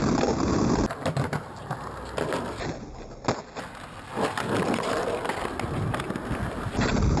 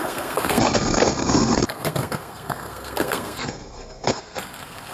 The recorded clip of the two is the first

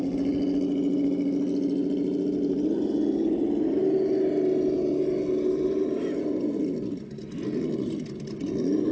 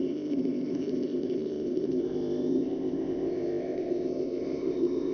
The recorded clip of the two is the first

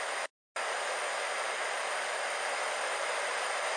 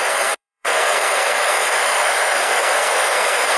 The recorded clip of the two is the first